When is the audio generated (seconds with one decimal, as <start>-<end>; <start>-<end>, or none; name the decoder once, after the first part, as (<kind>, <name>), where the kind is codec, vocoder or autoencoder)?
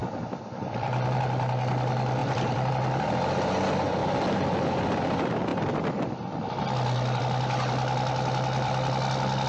0.0-1.2 (vocoder, BigVGAN v2); 2.2-2.7; 4.0-4.7